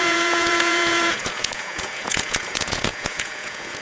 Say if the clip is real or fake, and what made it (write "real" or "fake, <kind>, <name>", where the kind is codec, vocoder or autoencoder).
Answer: fake, vocoder, Vocos